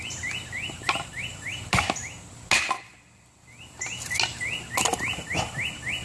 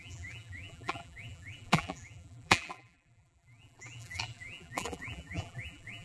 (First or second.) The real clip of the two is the first